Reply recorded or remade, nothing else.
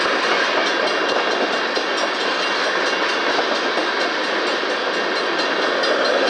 recorded